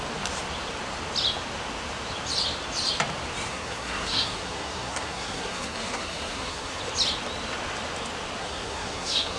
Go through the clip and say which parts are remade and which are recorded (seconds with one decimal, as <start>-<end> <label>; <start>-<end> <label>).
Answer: 0.0-3.5 recorded; 3.5-6.8 remade; 6.8-8.4 recorded; 8.4-9.4 remade